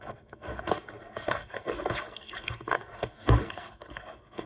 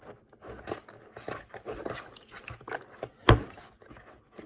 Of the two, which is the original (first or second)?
second